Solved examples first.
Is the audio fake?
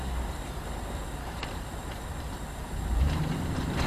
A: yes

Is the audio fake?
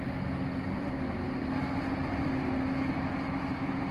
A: no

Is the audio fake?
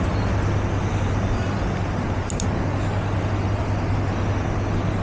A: no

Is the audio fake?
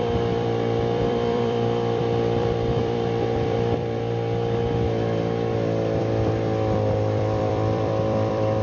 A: yes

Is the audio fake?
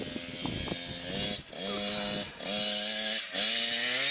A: no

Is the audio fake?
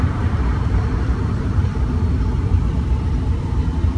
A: yes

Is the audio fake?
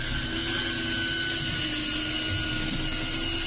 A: no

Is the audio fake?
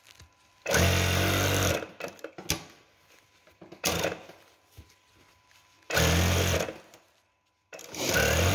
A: no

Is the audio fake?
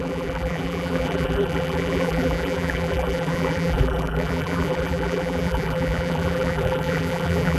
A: yes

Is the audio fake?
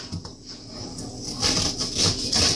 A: no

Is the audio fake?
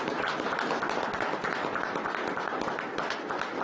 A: no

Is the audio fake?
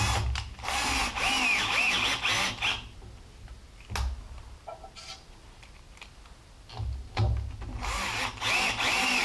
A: no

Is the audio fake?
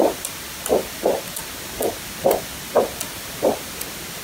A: no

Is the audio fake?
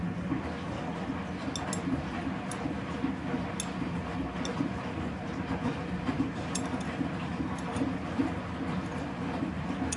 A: no